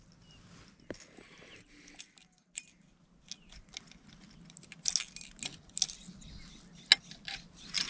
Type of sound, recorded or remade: recorded